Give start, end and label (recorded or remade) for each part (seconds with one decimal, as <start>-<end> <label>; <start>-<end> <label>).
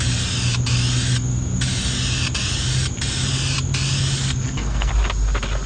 0.0-4.2 recorded; 4.2-4.9 remade; 4.9-5.7 recorded